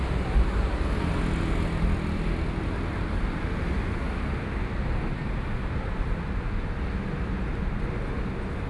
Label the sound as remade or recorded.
recorded